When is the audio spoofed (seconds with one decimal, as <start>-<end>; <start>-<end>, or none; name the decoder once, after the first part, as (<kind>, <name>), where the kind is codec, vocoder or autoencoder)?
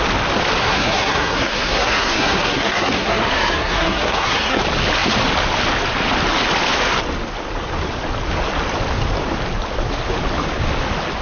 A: 0.6-4.6 (codec, SNAC)